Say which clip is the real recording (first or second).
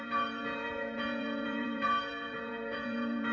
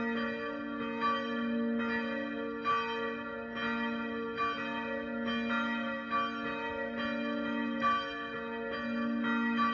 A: second